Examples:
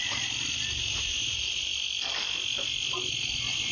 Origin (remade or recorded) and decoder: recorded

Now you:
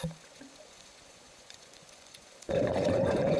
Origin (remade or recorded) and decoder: remade, vocoder, Vocos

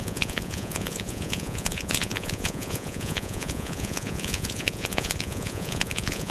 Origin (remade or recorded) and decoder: remade, vocoder, Vocos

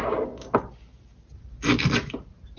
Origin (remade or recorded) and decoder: recorded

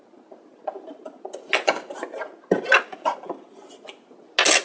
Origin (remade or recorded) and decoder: recorded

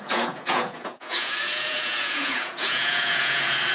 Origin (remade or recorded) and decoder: remade, vocoder, Vocos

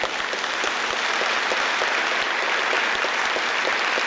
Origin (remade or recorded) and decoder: recorded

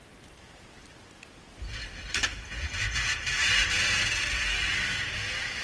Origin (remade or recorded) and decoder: recorded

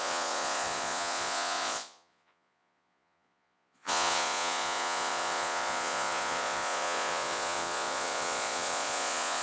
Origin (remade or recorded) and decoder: remade, vocoder, Vocos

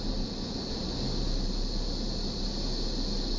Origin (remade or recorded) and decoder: recorded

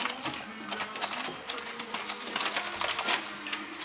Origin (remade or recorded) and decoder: recorded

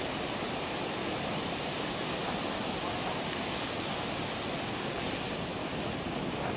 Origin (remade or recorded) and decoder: recorded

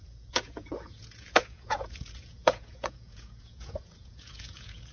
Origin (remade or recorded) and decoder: remade, vocoder, Vocos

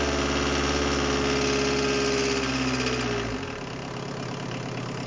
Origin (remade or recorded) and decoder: recorded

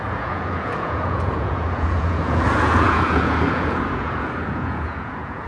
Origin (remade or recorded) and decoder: remade, vocoder, Vocos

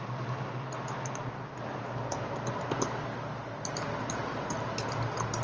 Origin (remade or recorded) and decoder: recorded